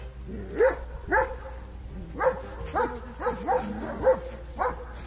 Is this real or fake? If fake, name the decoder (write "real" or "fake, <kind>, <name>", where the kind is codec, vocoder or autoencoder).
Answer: real